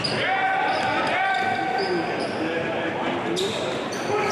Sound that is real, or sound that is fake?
real